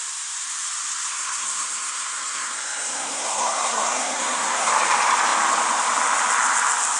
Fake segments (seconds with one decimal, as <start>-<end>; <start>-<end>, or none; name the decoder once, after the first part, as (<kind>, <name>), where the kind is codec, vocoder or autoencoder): 1.1-4.7 (codec, SNAC)